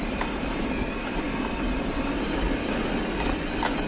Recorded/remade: recorded